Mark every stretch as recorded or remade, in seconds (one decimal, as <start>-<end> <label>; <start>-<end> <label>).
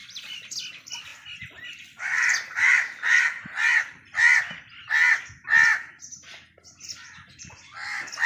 0.0-8.3 recorded